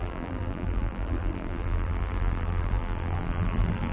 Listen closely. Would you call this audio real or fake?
fake